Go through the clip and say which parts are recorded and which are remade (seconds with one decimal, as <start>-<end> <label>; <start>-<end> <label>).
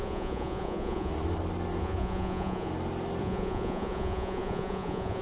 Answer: 0.0-1.1 remade; 1.1-1.8 recorded; 1.8-2.7 remade; 2.7-3.2 recorded; 3.2-5.2 remade